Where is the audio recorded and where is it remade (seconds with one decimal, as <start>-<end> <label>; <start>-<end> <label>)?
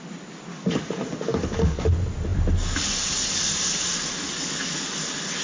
0.0-0.5 recorded; 0.5-1.9 remade; 1.9-5.4 recorded